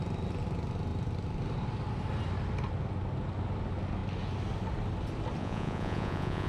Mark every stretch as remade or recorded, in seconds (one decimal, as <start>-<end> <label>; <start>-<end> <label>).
0.0-5.4 recorded; 5.4-6.5 remade